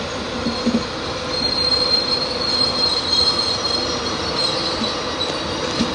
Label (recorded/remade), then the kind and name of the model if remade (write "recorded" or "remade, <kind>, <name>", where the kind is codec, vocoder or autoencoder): recorded